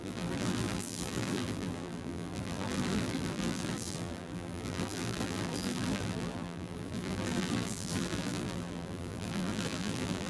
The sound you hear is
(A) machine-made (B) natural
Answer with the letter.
A